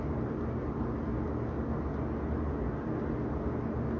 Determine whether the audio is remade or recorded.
recorded